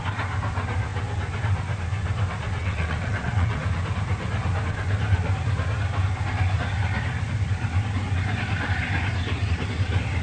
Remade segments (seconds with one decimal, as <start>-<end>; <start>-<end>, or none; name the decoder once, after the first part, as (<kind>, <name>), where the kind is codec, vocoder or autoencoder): 2.6-3.6 (vocoder, WaveNeXt)